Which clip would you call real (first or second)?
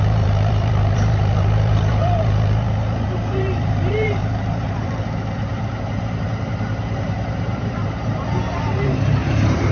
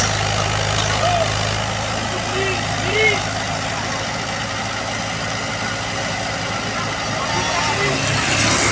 second